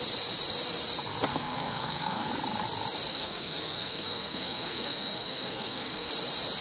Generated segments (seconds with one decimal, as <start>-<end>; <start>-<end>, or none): 1.3-2.3; 3.1-6.1